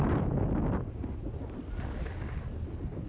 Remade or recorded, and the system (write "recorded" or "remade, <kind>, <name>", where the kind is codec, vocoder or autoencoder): recorded